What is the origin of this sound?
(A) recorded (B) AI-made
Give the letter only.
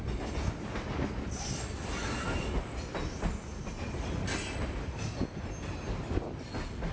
A